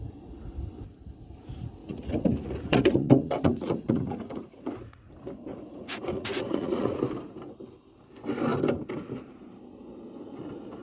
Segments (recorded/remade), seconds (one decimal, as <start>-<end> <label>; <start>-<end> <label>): 0.0-1.8 recorded; 1.8-5.1 remade; 5.1-5.5 recorded; 5.5-7.0 remade; 7.0-10.8 recorded